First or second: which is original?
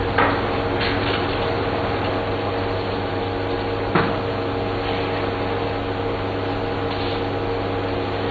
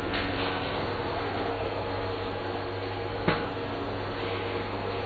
first